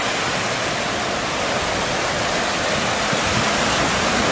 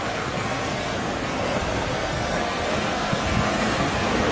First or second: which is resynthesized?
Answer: second